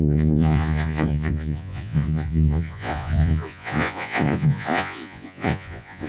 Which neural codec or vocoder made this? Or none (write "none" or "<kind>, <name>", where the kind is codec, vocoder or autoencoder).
vocoder, Vocos